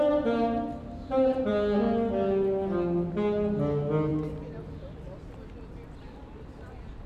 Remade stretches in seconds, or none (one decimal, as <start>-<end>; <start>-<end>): none